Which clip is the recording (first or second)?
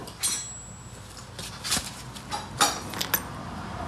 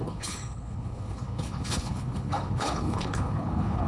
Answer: first